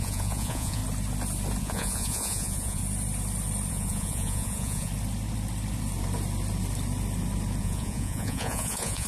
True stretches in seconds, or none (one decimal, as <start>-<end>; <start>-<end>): 0.8-1.6; 2.8-3.7; 4.9-7.6